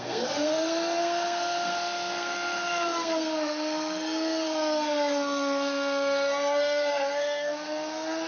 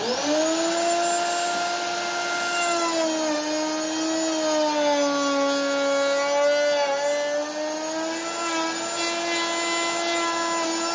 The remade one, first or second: first